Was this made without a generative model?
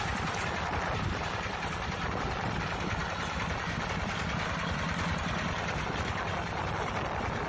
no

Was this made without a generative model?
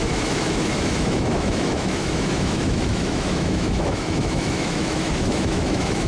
no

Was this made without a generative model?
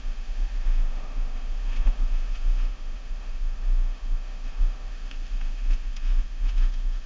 no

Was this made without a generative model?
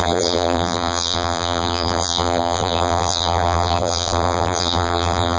no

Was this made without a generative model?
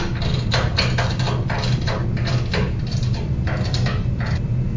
yes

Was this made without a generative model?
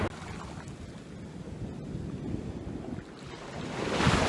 yes